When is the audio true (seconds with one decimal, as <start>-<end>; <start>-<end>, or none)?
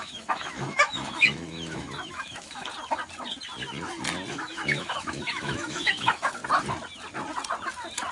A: 2.7-4.3; 6.4-8.1